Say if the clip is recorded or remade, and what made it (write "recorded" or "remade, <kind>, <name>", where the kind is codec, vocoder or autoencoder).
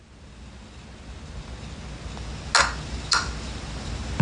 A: recorded